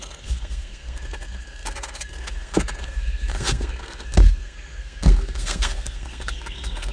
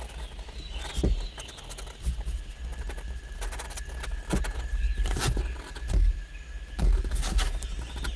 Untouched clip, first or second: second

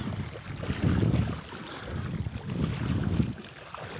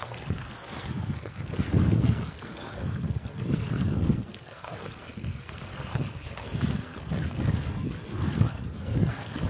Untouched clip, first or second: first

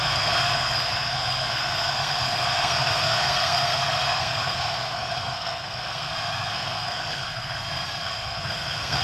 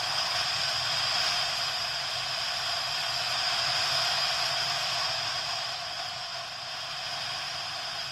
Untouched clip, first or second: second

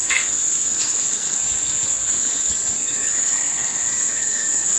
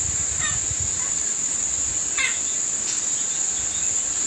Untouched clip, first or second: second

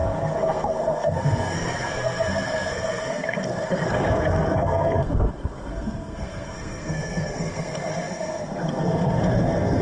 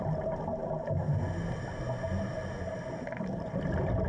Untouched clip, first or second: second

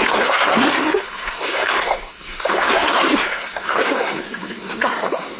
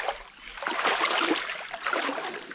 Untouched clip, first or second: second